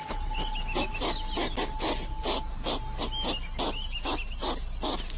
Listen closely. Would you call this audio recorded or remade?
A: recorded